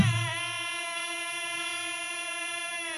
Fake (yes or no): yes